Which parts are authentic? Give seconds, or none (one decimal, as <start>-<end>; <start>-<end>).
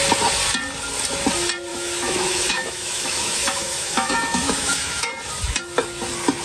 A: 0.0-1.7; 5.1-6.4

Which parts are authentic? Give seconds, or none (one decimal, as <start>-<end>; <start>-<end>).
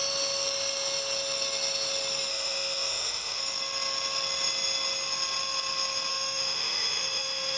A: 0.0-2.3; 3.4-6.1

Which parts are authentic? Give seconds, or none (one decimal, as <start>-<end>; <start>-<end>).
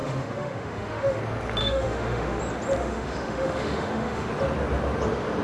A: 1.2-1.6; 2.4-2.8; 4.3-5.4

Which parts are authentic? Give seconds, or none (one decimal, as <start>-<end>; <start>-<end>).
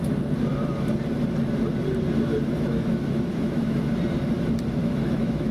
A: 0.0-2.3; 3.9-4.8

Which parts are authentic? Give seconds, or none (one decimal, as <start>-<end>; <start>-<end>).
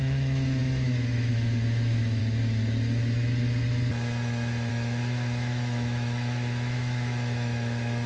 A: 2.2-4.7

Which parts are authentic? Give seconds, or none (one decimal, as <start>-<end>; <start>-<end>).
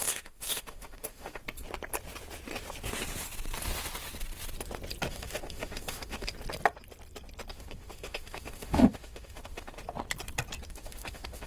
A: 1.4-5.1; 6.3-7.5; 9.8-10.7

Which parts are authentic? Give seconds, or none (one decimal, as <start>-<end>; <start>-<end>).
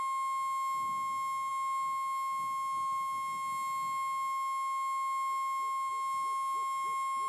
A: 0.0-7.3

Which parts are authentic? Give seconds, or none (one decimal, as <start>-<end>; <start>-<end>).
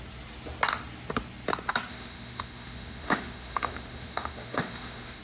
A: 0.0-1.9